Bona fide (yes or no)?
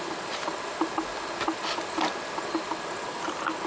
yes